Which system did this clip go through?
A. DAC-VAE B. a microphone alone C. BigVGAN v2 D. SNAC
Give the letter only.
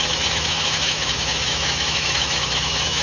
A